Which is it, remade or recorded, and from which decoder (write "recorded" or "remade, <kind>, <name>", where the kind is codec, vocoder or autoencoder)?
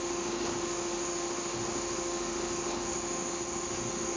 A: remade, autoencoder, DAC-VAE